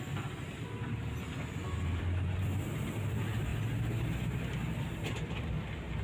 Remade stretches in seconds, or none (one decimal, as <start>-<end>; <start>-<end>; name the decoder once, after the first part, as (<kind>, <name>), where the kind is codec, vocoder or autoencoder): none